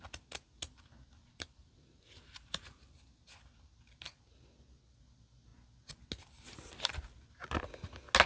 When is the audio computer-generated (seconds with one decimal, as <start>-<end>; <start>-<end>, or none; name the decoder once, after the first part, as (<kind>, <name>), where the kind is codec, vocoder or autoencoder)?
1.2-3.2 (vocoder, BigVGAN v2)